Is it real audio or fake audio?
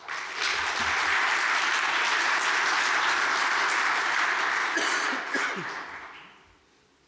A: real